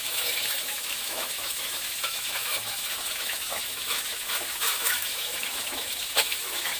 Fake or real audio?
fake